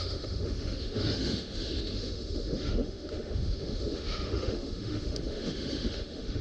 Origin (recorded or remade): remade